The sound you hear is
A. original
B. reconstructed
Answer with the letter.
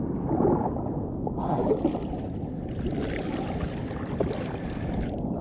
A